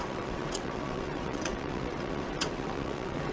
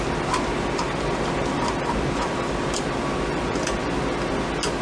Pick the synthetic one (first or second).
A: first